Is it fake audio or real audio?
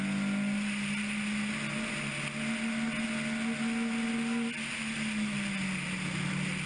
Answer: real